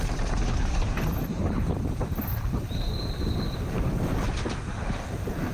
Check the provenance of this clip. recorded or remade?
remade